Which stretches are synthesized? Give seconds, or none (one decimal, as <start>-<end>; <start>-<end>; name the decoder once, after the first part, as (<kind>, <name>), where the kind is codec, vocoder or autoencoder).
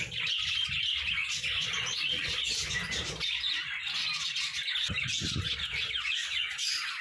1.2-2.5 (vocoder, Vocos); 6.2-7.0